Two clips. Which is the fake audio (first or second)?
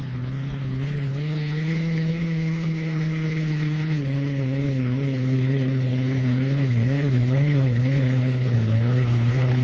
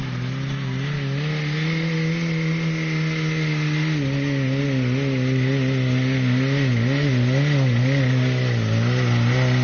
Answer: first